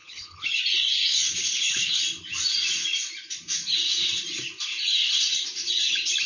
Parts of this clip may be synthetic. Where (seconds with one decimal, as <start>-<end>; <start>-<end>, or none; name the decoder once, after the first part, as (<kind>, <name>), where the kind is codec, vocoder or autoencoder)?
0.0-0.6 (codec, HILCodec); 1.0-2.0